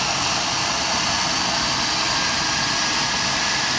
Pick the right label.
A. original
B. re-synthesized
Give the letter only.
A